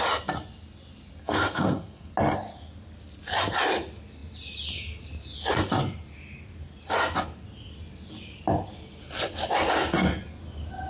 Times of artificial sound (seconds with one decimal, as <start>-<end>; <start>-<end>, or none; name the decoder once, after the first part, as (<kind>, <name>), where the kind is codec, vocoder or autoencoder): 1.2-2.1 (codec, SNAC)